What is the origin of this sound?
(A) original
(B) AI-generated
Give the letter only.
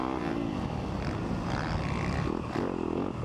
A